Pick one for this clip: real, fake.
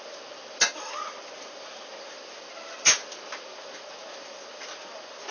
real